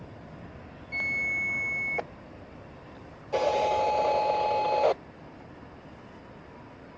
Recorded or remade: recorded